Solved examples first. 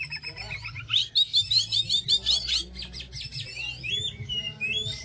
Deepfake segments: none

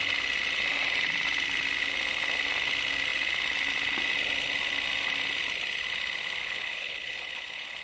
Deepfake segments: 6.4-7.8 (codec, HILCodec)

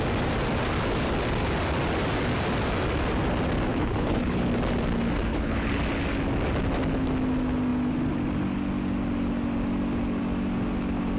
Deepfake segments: 3.7-4.4 (codec, HILCodec); 5.3-5.8

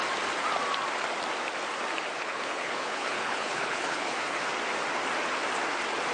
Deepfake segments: 2.2-4.4 (codec, HILCodec)